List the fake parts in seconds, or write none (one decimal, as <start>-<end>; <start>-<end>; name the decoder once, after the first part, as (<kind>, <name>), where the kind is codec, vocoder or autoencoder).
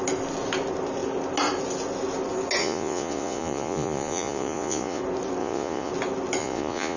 2.6-5.0 (vocoder, Vocos); 5.4-5.9; 6.4-7.0